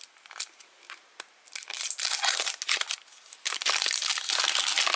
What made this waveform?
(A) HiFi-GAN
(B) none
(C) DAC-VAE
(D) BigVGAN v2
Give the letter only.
B